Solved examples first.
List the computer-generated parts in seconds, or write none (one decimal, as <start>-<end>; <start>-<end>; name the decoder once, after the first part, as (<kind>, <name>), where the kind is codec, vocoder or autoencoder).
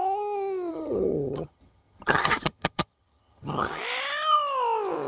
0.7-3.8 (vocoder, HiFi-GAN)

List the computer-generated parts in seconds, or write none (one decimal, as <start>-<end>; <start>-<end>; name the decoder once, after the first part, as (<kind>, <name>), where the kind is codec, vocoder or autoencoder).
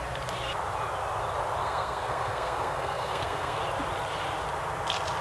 1.6-3.6 (codec, SNAC)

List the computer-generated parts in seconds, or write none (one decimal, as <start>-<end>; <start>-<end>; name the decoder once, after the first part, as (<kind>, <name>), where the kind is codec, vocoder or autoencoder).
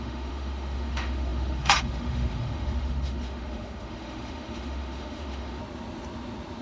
0.0-5.6 (autoencoder, DAC-VAE)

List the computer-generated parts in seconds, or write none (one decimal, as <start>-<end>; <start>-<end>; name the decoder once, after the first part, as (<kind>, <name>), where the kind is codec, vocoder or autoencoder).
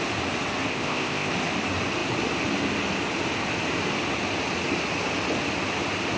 0.7-1.3 (codec, ZipCodec)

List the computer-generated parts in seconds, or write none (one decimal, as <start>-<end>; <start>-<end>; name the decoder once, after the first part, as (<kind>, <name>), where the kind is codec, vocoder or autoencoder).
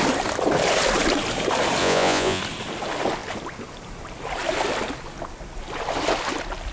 1.8-2.4 (vocoder, Vocos)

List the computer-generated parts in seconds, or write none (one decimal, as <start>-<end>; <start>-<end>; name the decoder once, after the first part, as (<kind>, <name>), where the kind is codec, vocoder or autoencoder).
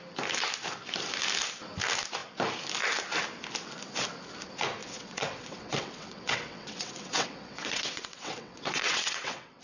4.8-9.6 (vocoder, WaveNeXt)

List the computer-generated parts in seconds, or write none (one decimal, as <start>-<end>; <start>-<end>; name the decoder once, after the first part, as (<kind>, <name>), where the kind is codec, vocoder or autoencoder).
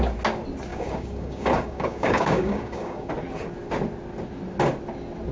0.7-3.1 (codec, DAC)